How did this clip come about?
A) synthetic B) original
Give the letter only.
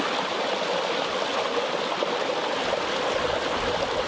B